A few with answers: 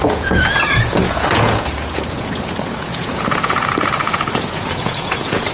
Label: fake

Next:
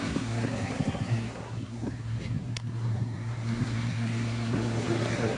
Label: fake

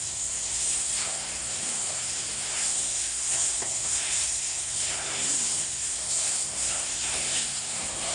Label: fake